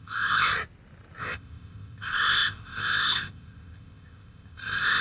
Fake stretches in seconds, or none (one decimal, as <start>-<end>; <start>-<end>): 0.0-0.5; 1.2-5.0